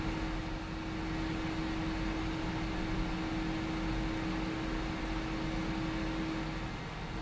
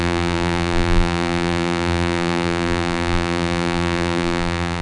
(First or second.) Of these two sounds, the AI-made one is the second